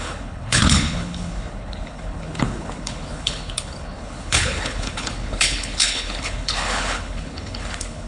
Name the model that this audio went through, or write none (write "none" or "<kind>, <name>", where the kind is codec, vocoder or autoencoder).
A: codec, HILCodec